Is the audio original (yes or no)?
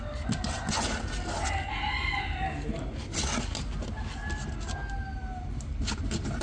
yes